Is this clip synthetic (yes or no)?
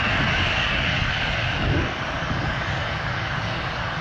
yes